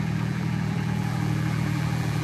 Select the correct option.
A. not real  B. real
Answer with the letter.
A